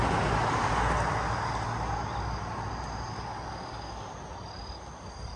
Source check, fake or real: real